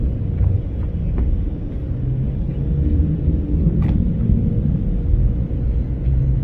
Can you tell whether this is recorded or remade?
recorded